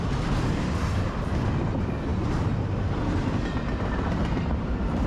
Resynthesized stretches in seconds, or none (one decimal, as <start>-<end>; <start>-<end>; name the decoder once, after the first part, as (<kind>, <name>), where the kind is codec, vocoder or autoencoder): 0.0-5.1 (vocoder, BigVGAN v2)